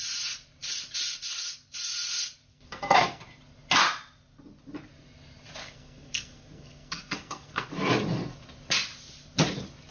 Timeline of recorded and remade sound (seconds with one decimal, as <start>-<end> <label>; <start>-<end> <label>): 0.0-2.5 recorded; 2.5-3.2 remade; 3.2-5.6 recorded; 5.6-7.7 remade; 7.7-9.9 recorded